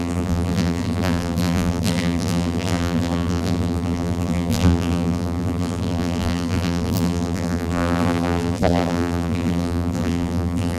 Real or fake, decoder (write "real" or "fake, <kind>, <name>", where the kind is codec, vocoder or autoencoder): fake, vocoder, BigVGAN v2